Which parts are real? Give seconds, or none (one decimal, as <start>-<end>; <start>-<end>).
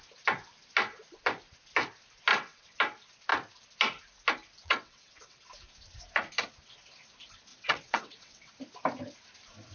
0.0-2.3; 2.8-4.6; 5.4-7.5; 8.5-9.7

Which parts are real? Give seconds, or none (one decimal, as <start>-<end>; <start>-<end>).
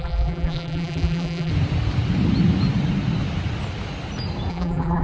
1.5-4.5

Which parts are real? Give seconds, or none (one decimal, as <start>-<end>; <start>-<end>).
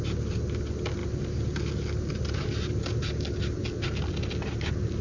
0.0-5.0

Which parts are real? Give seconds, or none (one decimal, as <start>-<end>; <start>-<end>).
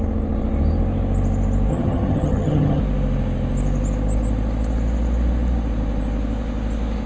0.0-1.7; 2.8-7.1